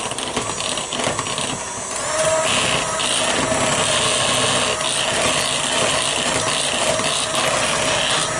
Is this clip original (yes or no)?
yes